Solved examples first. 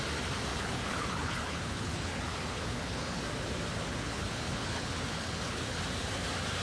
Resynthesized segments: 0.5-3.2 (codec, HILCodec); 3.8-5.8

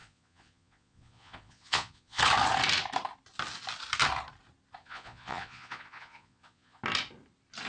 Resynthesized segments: 0.0-2.2 (vocoder, Vocos); 4.8-6.8

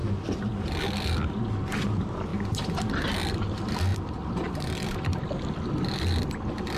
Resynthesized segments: 1.8-2.3 (vocoder, BigVGAN v2); 3.4-6.8